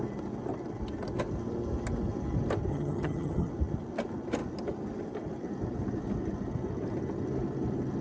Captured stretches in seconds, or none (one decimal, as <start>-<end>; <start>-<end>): 0.0-2.7; 3.5-8.0